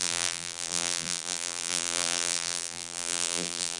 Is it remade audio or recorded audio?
remade